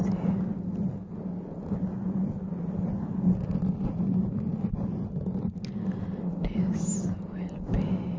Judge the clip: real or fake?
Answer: real